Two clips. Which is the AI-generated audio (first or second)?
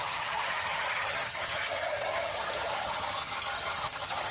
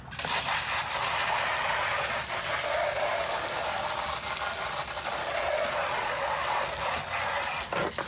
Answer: first